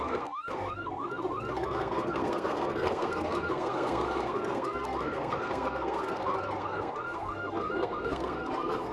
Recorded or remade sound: remade